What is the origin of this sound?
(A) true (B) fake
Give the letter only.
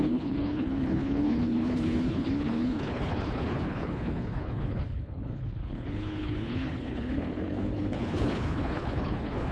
B